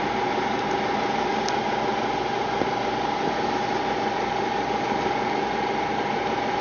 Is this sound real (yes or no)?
yes